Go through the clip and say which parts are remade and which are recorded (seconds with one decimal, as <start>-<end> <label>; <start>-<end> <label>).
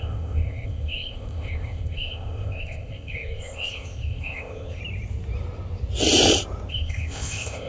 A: 0.0-4.8 remade; 4.8-6.7 recorded; 6.7-7.7 remade